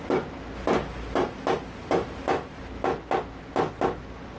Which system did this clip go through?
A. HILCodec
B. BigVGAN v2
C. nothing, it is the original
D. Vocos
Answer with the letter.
C